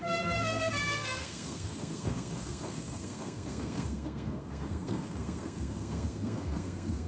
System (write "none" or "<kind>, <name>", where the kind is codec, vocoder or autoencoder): codec, SNAC